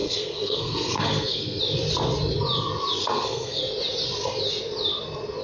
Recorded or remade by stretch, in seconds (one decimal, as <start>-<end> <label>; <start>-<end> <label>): 0.0-1.6 remade; 1.6-3.0 recorded; 3.0-3.6 remade; 3.6-5.4 recorded